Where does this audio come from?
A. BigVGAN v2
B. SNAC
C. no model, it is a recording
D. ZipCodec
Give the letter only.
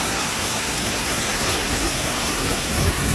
B